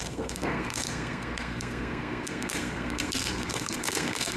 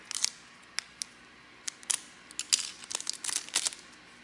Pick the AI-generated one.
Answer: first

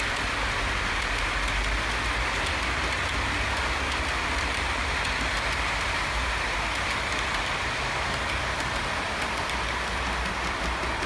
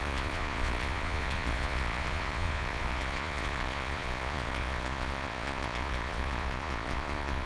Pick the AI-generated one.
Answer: second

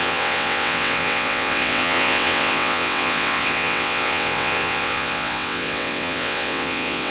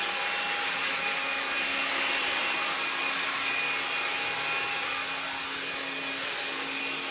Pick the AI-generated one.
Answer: first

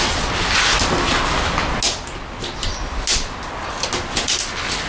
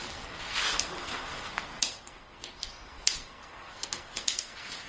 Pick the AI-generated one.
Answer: second